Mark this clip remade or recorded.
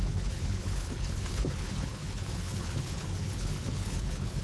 remade